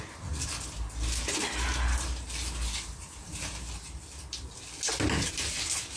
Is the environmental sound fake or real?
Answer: real